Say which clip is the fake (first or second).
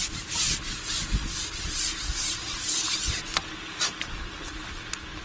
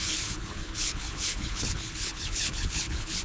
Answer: second